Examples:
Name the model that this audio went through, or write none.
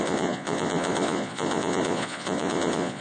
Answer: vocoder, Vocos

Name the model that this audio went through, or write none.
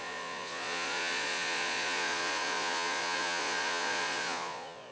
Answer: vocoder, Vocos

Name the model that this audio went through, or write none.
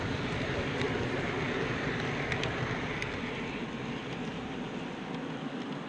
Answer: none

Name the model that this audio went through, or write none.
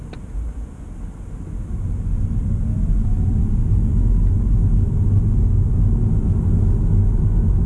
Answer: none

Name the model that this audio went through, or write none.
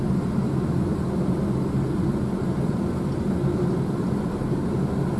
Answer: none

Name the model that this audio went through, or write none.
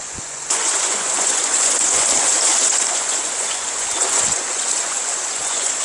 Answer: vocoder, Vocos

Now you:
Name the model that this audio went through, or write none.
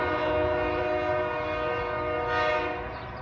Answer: none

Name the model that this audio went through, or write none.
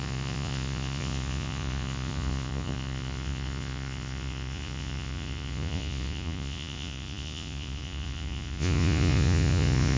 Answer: vocoder, Vocos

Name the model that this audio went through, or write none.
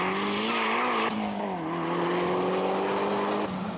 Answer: none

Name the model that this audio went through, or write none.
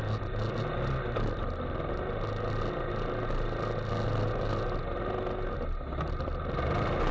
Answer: none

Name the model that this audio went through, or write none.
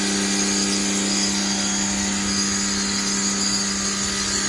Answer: none